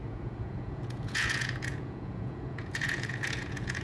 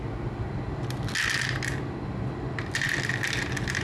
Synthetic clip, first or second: first